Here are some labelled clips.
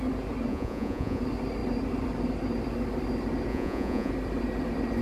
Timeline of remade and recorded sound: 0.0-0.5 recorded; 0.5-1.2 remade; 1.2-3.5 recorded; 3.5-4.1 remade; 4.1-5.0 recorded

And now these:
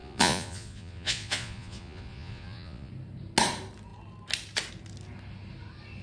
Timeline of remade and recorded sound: 0.0-2.9 remade; 2.9-6.0 recorded

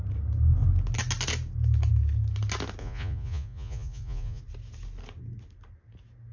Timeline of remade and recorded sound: 0.0-2.8 recorded; 2.8-4.4 remade; 4.4-6.3 recorded